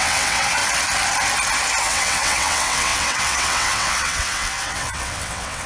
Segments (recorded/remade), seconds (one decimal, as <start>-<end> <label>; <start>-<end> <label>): 0.0-0.6 remade; 0.6-1.8 recorded; 1.8-5.7 remade